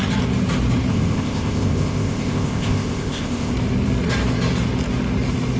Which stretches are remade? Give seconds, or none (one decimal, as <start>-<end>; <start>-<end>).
0.9-3.5